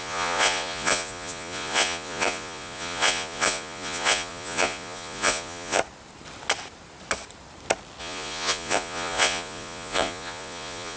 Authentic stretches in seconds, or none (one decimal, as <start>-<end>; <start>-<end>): 5.8-8.0

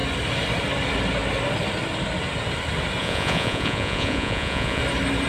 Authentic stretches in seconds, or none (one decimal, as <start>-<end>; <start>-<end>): 0.0-3.0; 4.8-5.3

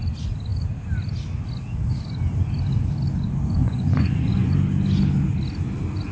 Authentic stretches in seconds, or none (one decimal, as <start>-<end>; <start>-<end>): 0.0-3.6; 4.5-6.1

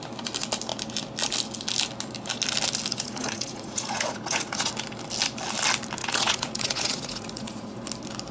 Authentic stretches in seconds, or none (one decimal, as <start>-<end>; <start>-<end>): 0.0-2.9; 4.7-6.0; 7.8-8.3